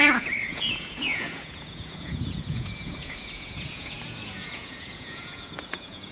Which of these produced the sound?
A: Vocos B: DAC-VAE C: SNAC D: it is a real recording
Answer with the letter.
A